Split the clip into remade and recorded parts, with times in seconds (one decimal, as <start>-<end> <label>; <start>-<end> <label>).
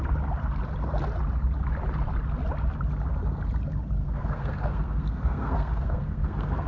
0.0-4.0 recorded; 4.0-6.7 remade